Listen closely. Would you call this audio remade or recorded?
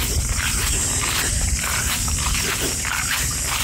recorded